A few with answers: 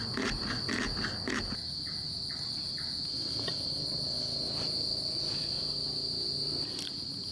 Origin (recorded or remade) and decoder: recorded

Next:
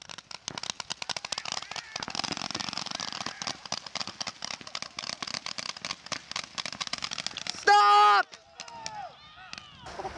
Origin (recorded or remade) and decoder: recorded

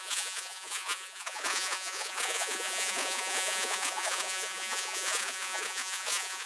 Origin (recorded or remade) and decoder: remade, vocoder, Vocos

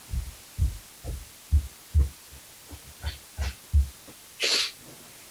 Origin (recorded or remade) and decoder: recorded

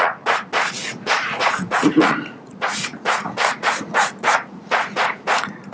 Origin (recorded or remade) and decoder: remade, vocoder, Vocos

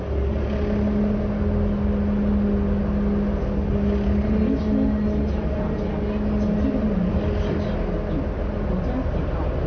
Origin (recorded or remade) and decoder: recorded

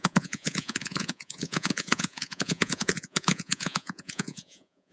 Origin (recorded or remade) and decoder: remade, vocoder, Vocos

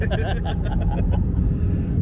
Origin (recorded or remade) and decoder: recorded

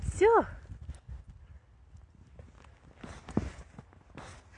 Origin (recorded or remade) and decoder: recorded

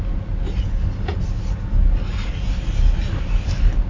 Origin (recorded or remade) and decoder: recorded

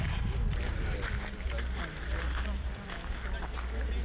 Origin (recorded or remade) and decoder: recorded